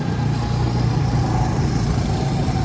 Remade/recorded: recorded